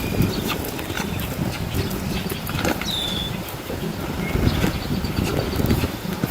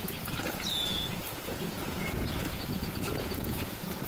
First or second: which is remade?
second